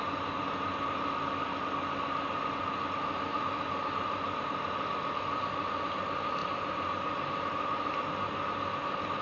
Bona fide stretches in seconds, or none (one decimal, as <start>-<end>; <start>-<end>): 0.0-6.4; 8.1-9.2